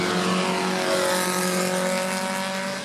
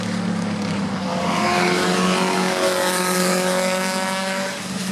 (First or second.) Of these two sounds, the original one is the first